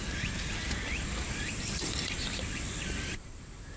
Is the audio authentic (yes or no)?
no